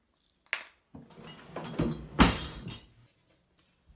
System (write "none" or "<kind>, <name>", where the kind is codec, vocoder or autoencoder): none